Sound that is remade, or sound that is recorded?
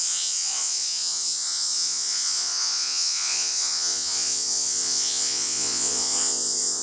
remade